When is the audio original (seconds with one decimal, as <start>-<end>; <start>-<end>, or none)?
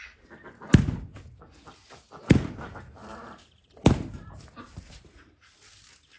0.0-3.0; 5.5-6.2